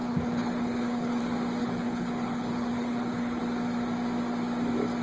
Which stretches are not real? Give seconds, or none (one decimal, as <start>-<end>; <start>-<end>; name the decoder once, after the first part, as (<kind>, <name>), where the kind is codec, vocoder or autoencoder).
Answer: 0.0-1.2 (codec, HILCodec); 1.6-3.4